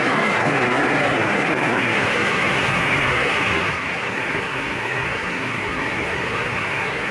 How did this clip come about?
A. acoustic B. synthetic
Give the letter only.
B